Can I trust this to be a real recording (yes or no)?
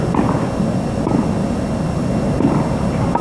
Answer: yes